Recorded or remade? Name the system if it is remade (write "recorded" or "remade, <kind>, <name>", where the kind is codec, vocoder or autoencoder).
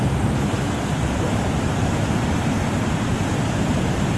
remade, vocoder, BigVGAN v2